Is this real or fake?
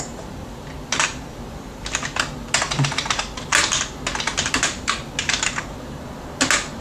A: real